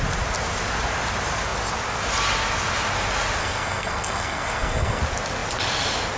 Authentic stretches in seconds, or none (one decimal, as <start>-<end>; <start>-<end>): 0.0-3.4; 5.0-6.2